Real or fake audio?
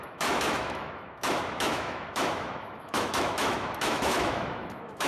fake